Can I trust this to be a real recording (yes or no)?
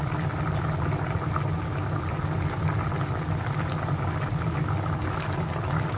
yes